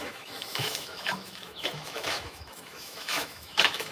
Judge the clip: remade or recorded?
remade